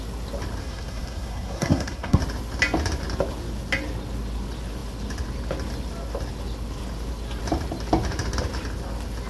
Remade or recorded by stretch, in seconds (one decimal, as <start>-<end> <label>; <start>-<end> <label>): 0.0-0.6 recorded; 0.6-2.2 remade; 2.2-9.3 recorded